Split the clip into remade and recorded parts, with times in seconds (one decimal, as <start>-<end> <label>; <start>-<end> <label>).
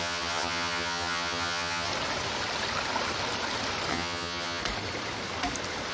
0.0-1.9 remade; 1.9-3.9 recorded; 3.9-4.6 remade; 4.6-5.9 recorded